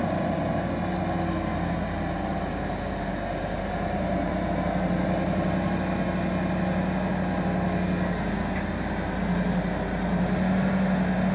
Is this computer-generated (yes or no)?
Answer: no